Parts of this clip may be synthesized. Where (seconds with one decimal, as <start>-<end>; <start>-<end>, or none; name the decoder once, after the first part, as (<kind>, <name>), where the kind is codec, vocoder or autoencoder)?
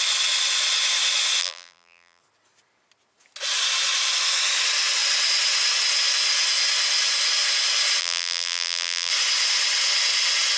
1.4-2.2 (vocoder, BigVGAN v2); 8.0-9.1